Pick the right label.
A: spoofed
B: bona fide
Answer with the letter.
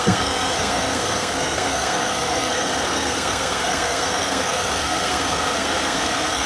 A